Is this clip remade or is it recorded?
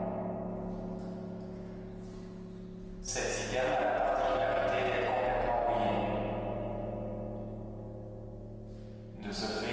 recorded